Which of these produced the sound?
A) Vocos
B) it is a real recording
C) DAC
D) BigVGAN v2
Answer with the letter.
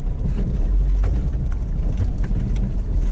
B